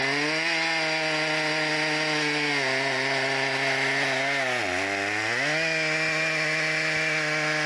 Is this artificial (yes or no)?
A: no